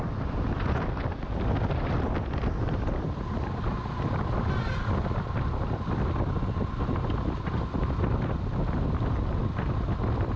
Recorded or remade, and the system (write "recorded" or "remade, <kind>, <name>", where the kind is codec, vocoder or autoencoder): recorded